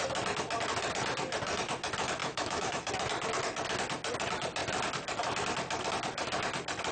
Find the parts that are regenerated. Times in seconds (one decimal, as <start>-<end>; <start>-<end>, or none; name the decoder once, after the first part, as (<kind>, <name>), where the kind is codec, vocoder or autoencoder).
2.2-2.9 (autoencoder, DAC-VAE)